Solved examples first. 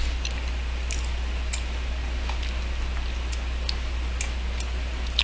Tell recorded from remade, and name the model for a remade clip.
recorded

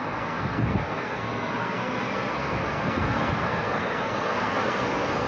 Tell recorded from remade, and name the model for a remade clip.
remade, codec, SNAC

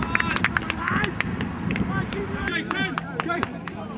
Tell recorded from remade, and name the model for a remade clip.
remade, vocoder, BigVGAN v2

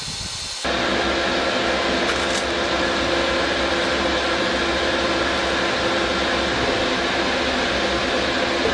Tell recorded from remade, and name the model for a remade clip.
recorded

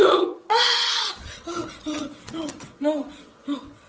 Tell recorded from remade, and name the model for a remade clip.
remade, vocoder, WaveNeXt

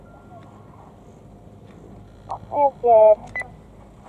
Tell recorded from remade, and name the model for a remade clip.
remade, vocoder, BigVGAN v2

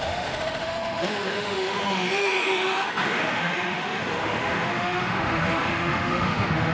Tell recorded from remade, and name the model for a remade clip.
remade, autoencoder, DAC-VAE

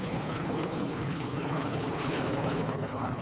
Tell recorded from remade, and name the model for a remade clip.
remade, codec, HILCodec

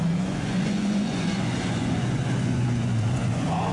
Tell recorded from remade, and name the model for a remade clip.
remade, vocoder, Vocos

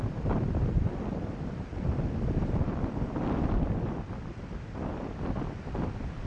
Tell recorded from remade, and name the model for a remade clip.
recorded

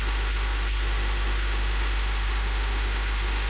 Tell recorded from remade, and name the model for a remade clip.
remade, autoencoder, DAC-VAE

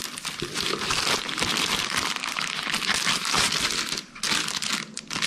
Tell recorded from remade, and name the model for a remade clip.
recorded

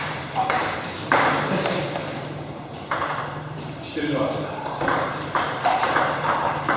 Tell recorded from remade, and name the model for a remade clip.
remade, vocoder, BigVGAN v2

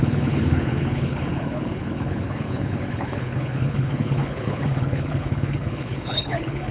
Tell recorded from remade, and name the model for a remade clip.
remade, codec, HILCodec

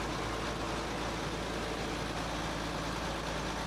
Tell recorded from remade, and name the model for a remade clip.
recorded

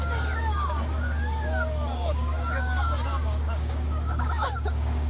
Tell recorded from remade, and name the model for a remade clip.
remade, codec, DAC